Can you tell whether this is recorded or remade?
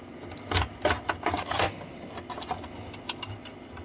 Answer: recorded